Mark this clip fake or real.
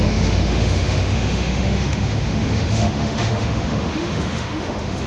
fake